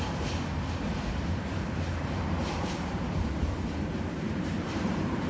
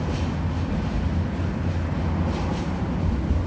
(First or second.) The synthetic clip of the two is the first